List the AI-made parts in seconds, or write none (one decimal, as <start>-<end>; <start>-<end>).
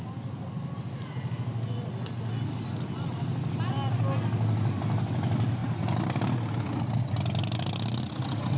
none